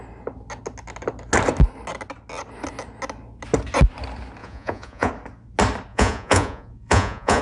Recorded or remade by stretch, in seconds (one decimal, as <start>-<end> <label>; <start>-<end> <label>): 0.0-4.4 recorded; 4.4-5.1 remade; 5.1-5.9 recorded; 5.9-7.4 remade